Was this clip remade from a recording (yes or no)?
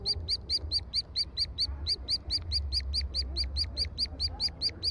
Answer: no